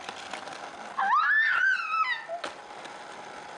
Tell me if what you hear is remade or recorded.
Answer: recorded